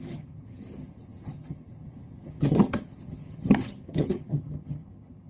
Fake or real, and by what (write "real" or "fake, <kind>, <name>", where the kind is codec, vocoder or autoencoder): fake, vocoder, HiFi-GAN